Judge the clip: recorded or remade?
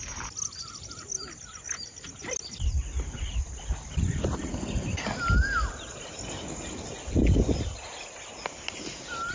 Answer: recorded